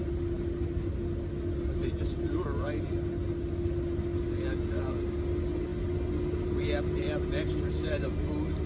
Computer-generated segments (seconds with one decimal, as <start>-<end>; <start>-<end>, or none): none